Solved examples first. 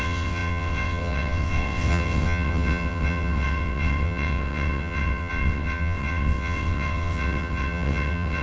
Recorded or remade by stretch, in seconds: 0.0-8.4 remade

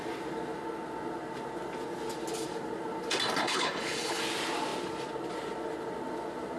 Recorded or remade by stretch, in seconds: 0.0-3.4 recorded; 3.4-4.2 remade; 4.2-6.6 recorded

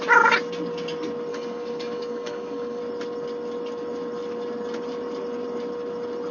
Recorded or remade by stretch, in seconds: 0.0-1.3 recorded; 1.3-2.8 remade; 2.8-6.3 recorded

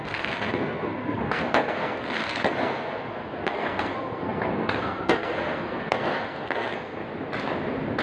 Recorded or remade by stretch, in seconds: 0.0-7.0 remade; 7.0-8.0 recorded

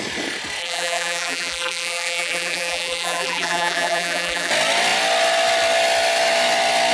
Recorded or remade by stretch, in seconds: 0.0-0.6 recorded; 0.6-4.5 remade; 4.5-6.9 recorded

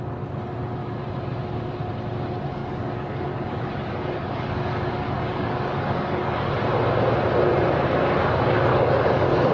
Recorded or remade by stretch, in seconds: 0.0-2.6 recorded; 2.6-6.5 remade; 6.5-8.7 recorded; 8.7-9.5 remade